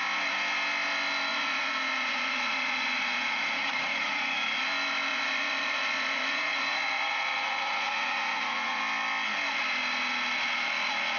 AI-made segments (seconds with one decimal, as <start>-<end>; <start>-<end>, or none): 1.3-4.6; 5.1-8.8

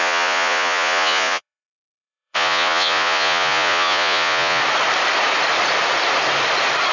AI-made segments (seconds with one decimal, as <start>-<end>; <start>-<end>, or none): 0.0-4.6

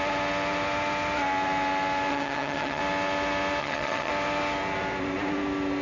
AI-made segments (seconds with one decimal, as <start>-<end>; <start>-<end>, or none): 2.1-2.8; 3.6-4.1

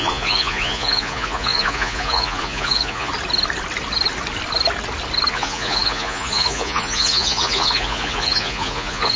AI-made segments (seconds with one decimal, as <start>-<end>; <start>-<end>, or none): 0.0-3.1; 5.3-9.2